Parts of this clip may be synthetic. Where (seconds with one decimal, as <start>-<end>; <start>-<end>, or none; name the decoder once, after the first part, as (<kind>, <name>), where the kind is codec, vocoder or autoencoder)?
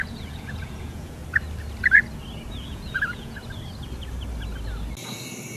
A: 0.0-1.2 (vocoder, Vocos); 2.5-3.4